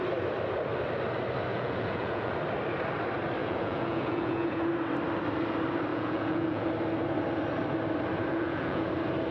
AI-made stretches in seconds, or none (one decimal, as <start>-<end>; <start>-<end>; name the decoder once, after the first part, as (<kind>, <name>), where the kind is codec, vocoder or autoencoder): 1.5-2.3 (vocoder, Vocos); 3.4-4.7; 5.9-6.7; 8.3-8.9